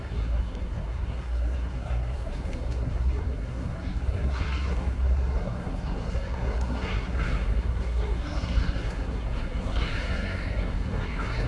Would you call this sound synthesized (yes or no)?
yes